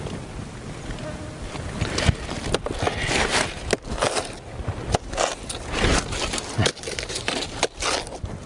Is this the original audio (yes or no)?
yes